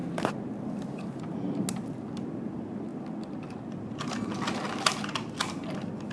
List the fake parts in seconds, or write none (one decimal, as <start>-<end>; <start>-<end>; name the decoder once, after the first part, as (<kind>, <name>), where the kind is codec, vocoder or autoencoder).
none